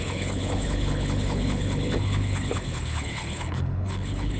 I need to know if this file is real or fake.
fake